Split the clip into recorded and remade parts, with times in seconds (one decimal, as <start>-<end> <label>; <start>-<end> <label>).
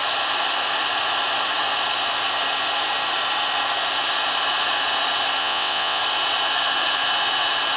0.0-5.4 recorded; 5.4-6.0 remade; 6.0-7.8 recorded